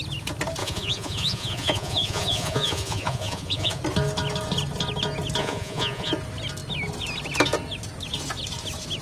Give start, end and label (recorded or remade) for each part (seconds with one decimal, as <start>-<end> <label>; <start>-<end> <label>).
0.0-0.6 recorded; 0.6-3.8 remade; 3.8-5.4 recorded; 5.4-6.1 remade; 6.1-9.0 recorded